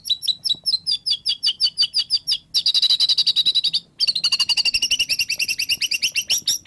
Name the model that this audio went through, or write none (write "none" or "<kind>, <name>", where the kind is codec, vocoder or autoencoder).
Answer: none